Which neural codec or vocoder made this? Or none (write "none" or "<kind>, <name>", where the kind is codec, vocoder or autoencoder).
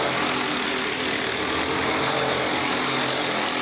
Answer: none